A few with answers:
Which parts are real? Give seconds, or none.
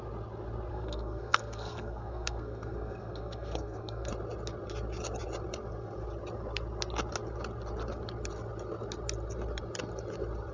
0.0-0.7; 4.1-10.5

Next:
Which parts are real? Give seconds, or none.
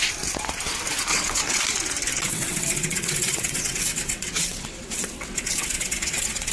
0.0-1.1; 1.6-2.3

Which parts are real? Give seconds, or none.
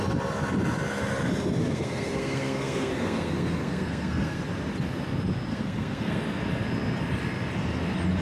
0.0-1.6; 4.4-5.5; 6.2-8.2